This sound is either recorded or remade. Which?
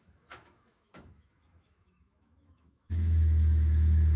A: remade